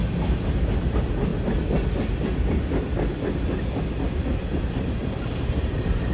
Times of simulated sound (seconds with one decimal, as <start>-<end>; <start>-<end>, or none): 0.0-1.3; 4.6-6.1